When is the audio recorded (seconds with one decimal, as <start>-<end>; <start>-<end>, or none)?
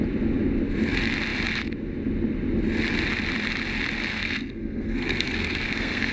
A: 0.0-4.1